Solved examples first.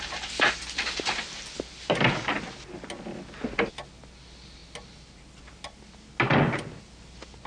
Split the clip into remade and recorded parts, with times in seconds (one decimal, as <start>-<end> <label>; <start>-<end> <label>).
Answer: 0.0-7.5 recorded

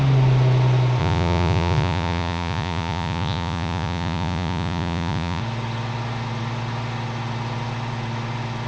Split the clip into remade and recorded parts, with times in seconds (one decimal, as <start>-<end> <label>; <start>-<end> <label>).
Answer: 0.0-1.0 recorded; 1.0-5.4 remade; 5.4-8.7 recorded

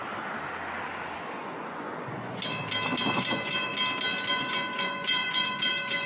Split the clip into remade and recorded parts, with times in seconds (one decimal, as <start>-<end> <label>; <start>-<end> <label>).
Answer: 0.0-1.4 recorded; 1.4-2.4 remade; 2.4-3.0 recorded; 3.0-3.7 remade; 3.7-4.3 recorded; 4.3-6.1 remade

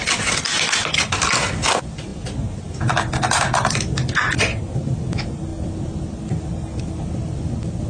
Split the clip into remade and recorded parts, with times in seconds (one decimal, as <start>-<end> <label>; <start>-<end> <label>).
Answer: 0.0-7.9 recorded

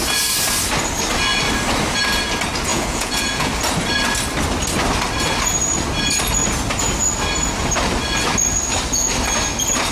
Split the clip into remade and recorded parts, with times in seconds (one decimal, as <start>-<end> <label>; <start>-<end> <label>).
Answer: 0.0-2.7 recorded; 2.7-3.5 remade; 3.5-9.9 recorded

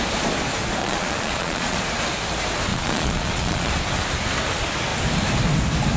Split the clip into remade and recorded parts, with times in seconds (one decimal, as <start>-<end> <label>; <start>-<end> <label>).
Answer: 0.0-0.8 recorded; 0.8-1.8 remade; 1.8-2.7 recorded; 2.7-3.7 remade; 3.7-6.0 recorded